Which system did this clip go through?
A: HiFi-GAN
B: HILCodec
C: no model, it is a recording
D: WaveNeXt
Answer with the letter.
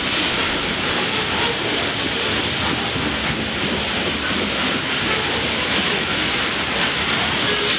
C